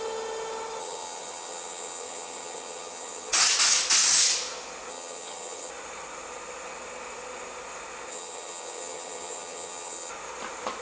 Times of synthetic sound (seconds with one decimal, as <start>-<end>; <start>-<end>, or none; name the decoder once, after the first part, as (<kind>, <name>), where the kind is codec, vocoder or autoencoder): 0.8-3.3 (vocoder, HiFi-GAN); 4.9-5.7; 8.1-10.1